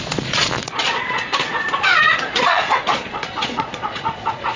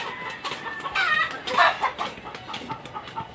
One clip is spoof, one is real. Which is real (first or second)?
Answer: second